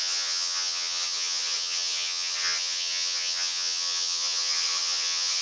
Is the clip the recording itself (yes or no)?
no